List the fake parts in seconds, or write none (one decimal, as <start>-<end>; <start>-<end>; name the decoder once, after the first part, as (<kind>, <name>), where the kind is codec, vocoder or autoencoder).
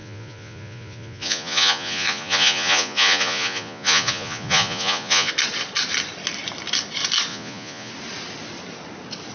0.0-5.3 (vocoder, Vocos); 7.3-7.9